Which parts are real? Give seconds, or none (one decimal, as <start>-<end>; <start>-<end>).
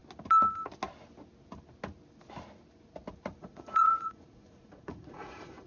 0.0-3.4